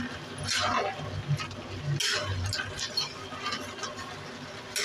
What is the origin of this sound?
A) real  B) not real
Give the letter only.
A